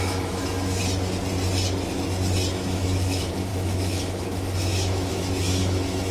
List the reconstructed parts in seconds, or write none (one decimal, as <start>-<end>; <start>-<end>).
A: 0.0-0.8; 2.5-6.1